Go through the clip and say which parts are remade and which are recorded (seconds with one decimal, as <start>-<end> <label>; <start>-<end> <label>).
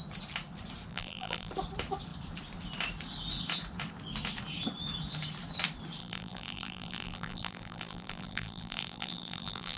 0.0-0.9 recorded; 0.9-1.5 remade; 1.5-6.0 recorded; 6.0-9.8 remade